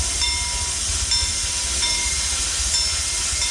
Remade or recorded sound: recorded